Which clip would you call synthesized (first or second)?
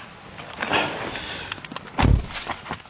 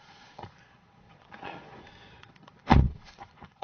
second